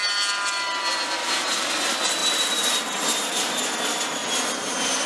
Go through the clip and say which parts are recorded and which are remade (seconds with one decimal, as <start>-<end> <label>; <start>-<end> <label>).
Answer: 0.0-1.2 recorded; 1.2-1.7 remade; 1.7-2.2 recorded; 2.2-3.6 remade; 3.6-5.1 recorded